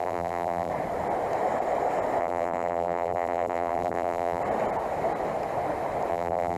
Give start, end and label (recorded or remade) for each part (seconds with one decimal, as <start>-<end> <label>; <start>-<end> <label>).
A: 0.0-0.7 remade; 0.7-2.2 recorded; 2.2-4.4 remade; 4.4-6.1 recorded; 6.1-6.6 remade